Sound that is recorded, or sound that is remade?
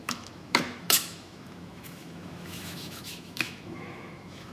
remade